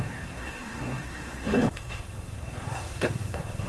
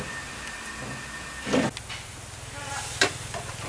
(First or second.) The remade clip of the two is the first